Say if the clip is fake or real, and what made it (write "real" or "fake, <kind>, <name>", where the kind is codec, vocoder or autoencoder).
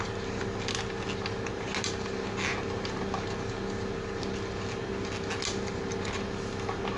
real